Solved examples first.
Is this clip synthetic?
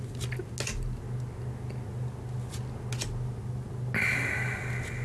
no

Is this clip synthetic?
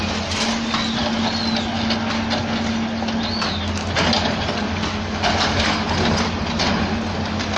no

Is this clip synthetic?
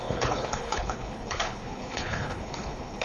yes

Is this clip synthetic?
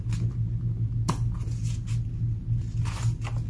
no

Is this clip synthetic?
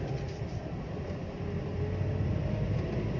no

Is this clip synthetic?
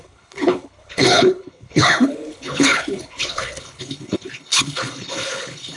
yes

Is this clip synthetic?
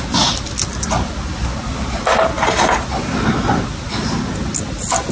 no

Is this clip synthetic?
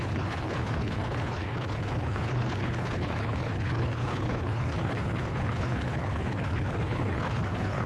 yes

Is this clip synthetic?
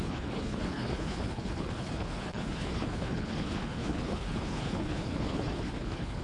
yes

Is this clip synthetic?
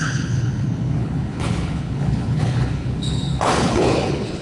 yes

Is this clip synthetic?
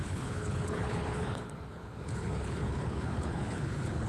yes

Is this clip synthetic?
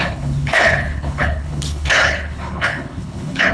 yes